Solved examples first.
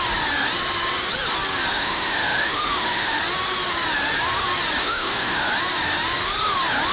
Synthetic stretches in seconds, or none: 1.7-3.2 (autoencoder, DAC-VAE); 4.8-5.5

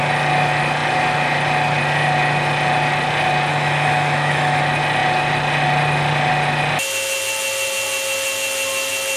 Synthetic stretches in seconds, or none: 3.5-4.6 (autoencoder, DAC-VAE)

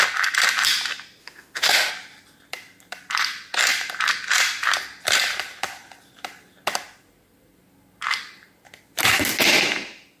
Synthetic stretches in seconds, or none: 1.2-1.9 (autoencoder, DAC-VAE)

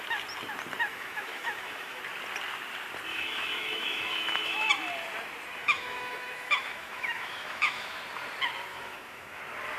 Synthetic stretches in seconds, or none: 0.9-2.0 (autoencoder, DAC-VAE); 3.1-4.7; 5.6-8.0; 8.7-9.4

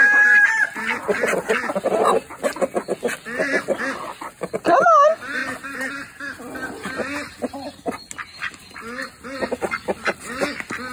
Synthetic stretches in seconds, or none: none

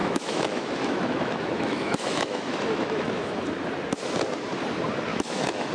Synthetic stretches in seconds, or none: 0.0-3.4 (autoencoder, DAC-VAE); 5.1-5.7

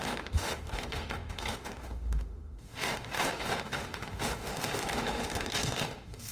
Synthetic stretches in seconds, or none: 0.0-6.3 (autoencoder, DAC-VAE)

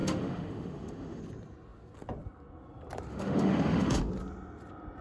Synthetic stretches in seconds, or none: 0.0-1.2 (autoencoder, DAC-VAE); 3.1-4.0